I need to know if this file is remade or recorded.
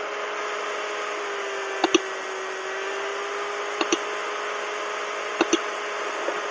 recorded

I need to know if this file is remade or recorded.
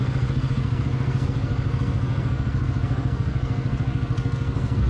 remade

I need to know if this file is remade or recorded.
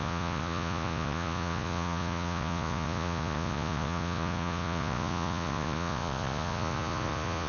remade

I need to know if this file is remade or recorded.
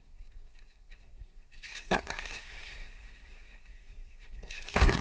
remade